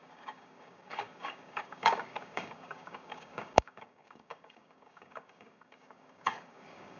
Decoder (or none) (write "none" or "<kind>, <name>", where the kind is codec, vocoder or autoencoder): codec, DAC